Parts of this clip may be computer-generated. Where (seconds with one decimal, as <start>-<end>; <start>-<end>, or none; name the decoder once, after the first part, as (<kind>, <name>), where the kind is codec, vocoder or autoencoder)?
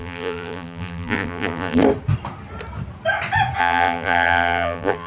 0.0-1.8 (vocoder, BigVGAN v2); 3.6-5.1